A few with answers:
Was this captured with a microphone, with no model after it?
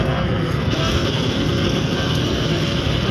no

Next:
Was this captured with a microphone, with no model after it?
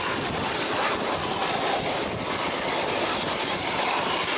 yes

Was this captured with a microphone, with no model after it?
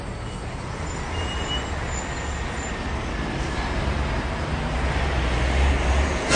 yes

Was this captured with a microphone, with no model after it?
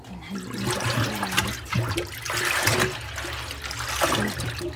yes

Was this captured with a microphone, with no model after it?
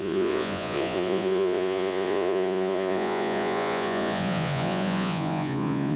no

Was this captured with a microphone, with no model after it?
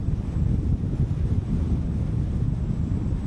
yes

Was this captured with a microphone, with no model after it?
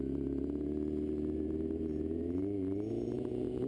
no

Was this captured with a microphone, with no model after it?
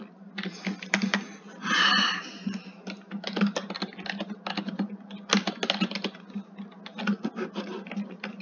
yes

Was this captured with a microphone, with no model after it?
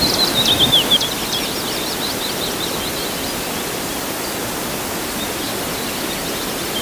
yes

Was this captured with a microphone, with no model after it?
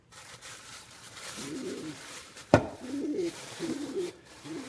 no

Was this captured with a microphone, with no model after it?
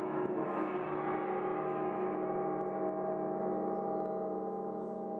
no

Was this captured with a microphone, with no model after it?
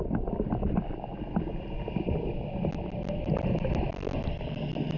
yes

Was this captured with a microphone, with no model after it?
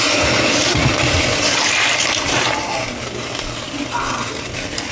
no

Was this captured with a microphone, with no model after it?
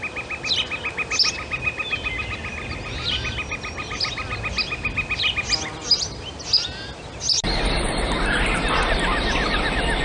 yes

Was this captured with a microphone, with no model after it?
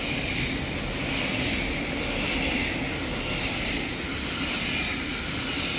yes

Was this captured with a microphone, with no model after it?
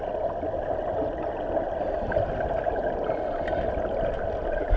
yes